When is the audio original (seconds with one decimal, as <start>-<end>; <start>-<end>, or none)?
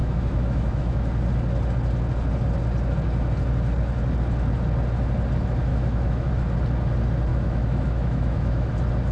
1.1-5.7; 6.3-7.3; 8.7-9.1